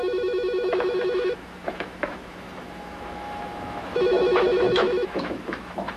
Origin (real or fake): fake